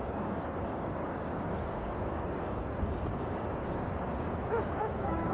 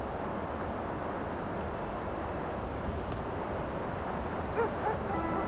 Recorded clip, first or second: second